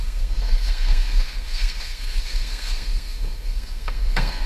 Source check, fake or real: fake